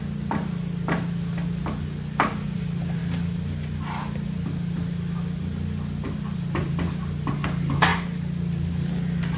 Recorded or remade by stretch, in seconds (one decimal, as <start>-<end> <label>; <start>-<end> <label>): 0.0-9.4 recorded